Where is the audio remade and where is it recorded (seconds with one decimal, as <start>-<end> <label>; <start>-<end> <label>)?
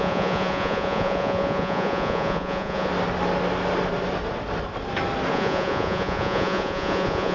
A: 0.0-2.9 remade; 2.9-5.3 recorded; 5.3-7.3 remade